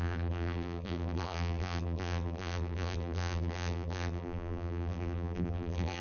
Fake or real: fake